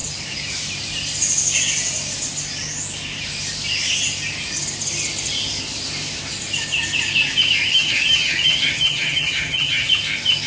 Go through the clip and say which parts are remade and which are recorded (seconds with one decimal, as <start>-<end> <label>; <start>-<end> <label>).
0.0-7.7 recorded; 7.7-9.9 remade; 9.9-10.5 recorded